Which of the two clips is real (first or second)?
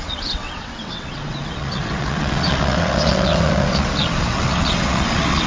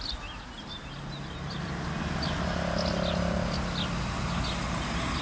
second